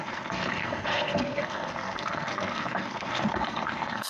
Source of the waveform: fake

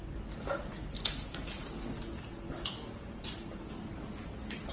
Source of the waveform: real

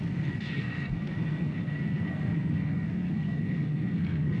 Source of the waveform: fake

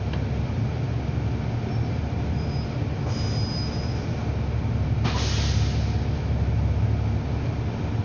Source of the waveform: real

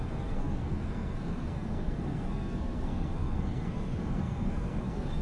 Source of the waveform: fake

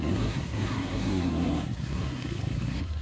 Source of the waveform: fake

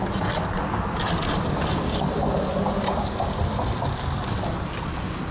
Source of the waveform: real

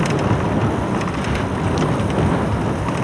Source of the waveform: real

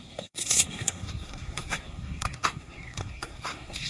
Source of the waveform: fake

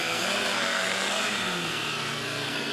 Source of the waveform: fake